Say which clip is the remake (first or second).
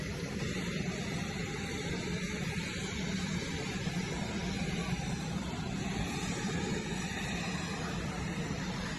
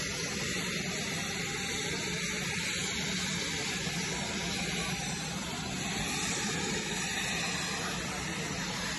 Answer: first